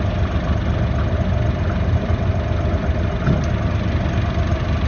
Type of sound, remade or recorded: recorded